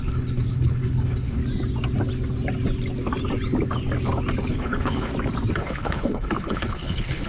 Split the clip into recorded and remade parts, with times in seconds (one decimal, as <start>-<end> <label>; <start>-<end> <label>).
0.0-1.4 remade; 1.4-4.5 recorded; 4.5-5.1 remade; 5.1-5.6 recorded; 5.6-7.3 remade

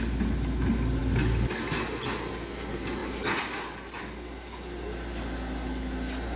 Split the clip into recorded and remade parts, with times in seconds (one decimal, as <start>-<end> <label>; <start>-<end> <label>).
0.0-6.4 recorded

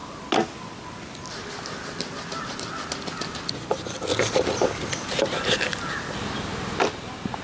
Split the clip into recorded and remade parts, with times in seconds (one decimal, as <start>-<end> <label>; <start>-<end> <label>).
0.0-7.4 recorded

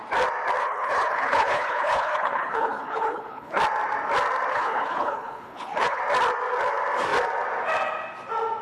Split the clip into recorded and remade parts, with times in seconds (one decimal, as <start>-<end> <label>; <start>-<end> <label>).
0.0-0.6 recorded; 0.6-3.6 remade; 3.6-4.5 recorded; 4.5-6.0 remade; 6.0-8.6 recorded

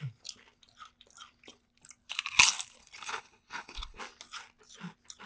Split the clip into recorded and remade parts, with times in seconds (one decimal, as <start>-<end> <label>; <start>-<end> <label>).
0.0-2.8 recorded; 2.8-4.0 remade; 4.0-5.3 recorded

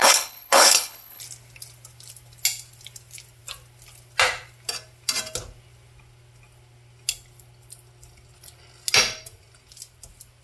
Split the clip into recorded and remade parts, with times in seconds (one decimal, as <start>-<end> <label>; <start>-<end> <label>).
0.0-1.2 remade; 1.2-10.4 recorded